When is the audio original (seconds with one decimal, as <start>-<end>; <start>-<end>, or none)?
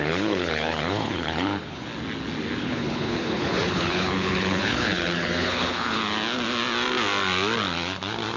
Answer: 1.9-2.6; 6.0-8.4